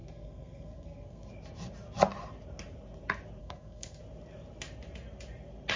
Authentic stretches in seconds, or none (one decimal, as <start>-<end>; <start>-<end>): 1.3-3.4; 4.0-5.8